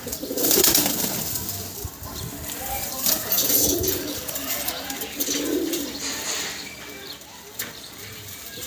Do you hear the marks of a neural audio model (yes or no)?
yes